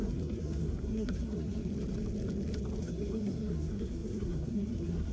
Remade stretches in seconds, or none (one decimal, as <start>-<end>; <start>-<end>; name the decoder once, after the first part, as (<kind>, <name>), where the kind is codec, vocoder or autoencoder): 0.0-1.7 (codec, SNAC); 2.8-5.1